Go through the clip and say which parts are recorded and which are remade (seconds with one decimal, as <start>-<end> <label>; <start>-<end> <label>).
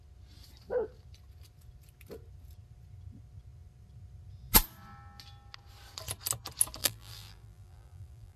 0.0-6.8 recorded; 6.8-8.4 remade